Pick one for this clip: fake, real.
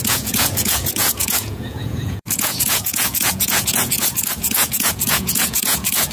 fake